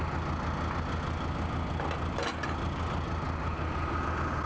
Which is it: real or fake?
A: real